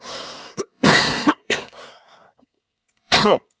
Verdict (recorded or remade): remade